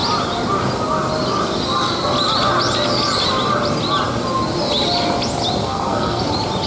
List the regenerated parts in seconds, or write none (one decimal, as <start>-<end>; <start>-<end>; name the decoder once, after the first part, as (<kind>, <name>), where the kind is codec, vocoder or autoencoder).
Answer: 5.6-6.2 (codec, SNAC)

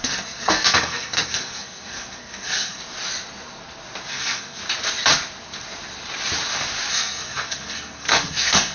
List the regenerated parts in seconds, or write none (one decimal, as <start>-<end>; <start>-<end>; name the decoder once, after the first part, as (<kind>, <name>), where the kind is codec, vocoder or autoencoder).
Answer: 0.0-2.8 (codec, SNAC); 4.1-4.6; 6.9-8.7

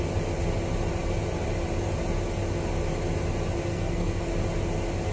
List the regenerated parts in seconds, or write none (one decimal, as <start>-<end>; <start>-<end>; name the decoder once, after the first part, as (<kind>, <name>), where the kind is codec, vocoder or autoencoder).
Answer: 3.7-4.3 (codec, SNAC)

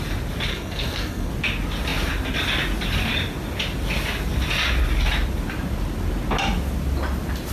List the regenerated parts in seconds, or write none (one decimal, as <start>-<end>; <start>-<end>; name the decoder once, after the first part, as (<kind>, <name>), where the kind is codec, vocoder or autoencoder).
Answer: 0.5-1.3 (codec, SNAC)

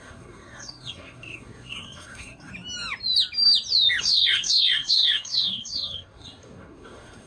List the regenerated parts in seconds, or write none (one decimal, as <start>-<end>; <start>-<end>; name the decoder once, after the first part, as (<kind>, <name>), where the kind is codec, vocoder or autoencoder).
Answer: 0.0-2.5 (codec, SNAC); 4.0-7.3

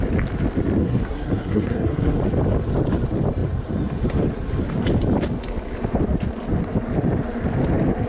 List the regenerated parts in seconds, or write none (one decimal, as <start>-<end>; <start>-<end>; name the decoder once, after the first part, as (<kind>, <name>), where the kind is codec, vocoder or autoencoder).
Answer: 0.8-2.2 (codec, SNAC)

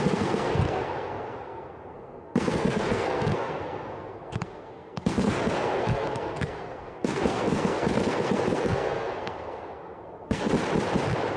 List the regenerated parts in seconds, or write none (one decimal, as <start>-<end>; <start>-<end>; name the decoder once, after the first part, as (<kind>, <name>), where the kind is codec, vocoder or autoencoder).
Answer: 0.0-10.5 (codec, SNAC)

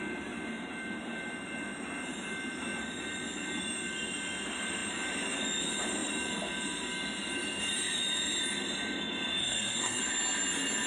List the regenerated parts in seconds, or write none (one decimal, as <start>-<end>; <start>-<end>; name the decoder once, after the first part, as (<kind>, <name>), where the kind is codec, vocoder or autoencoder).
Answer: 9.4-10.0 (codec, SNAC)